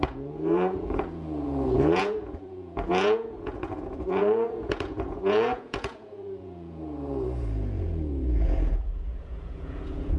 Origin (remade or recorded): remade